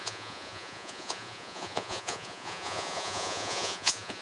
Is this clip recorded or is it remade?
remade